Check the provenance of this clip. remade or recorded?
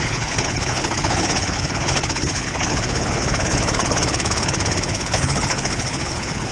remade